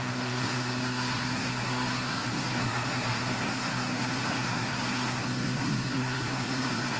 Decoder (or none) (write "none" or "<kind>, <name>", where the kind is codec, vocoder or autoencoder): codec, SNAC